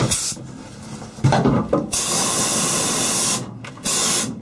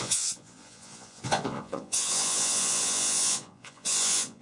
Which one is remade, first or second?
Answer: second